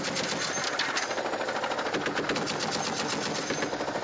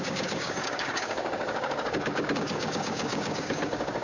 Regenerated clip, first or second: second